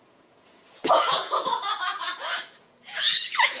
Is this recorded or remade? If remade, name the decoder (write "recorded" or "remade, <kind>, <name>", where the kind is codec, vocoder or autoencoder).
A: remade, vocoder, Vocos